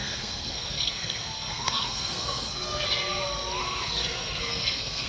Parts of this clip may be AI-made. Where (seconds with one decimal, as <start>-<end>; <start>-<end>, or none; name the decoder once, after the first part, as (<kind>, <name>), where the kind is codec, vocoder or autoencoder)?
0.0-3.1 (codec, SNAC); 3.6-5.1